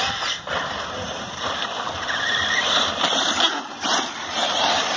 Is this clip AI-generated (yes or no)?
no